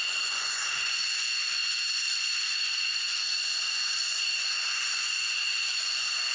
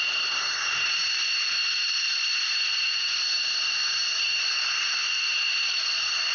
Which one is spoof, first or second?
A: first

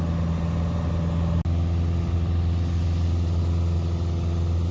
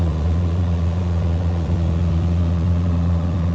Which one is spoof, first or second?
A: second